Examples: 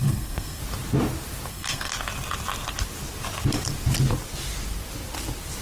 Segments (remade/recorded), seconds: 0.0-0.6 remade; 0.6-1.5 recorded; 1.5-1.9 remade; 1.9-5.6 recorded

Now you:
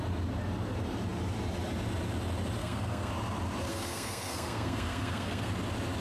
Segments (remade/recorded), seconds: 0.0-2.6 recorded; 2.6-3.1 remade; 3.1-3.7 recorded; 3.7-5.5 remade; 5.5-6.0 recorded

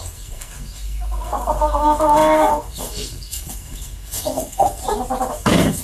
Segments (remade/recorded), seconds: 0.0-4.8 remade; 4.8-5.3 recorded; 5.3-5.8 remade

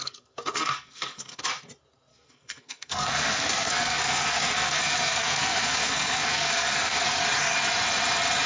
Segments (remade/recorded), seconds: 0.0-1.4 remade; 1.4-2.1 recorded; 2.1-7.2 remade; 7.2-8.5 recorded

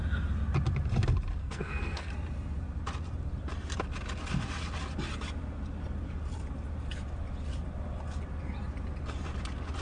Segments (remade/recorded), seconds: 0.0-1.4 recorded; 1.4-2.1 remade; 2.1-9.8 recorded